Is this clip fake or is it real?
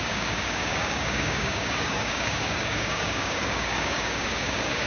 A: fake